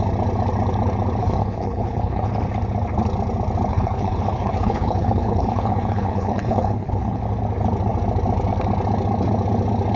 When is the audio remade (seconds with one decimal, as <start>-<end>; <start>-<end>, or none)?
1.2-2.3; 3.7-7.2